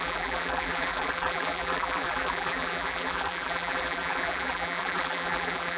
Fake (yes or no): yes